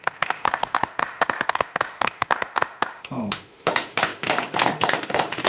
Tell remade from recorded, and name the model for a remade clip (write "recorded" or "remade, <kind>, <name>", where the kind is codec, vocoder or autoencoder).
remade, autoencoder, DAC-VAE